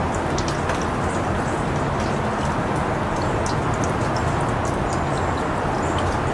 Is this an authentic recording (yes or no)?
yes